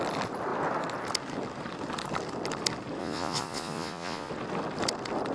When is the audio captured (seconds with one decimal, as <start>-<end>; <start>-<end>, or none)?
0.0-3.0; 4.3-5.3